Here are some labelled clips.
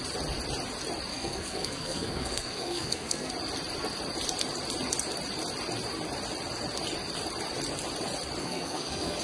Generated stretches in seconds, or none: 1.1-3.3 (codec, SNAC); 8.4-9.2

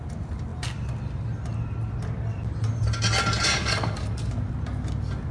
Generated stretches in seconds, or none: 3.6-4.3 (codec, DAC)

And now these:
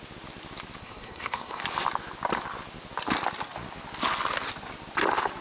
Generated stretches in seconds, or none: 0.8-1.6 (codec, SNAC)

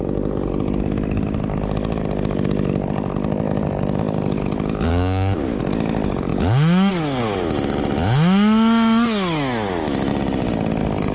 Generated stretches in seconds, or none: 4.9-5.6 (codec, DAC)

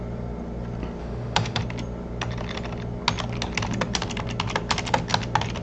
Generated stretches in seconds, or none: 1.0-1.6 (autoencoder, DAC-VAE)

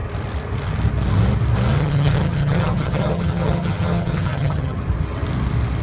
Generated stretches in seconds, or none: 1.8-4.8 (vocoder, HiFi-GAN)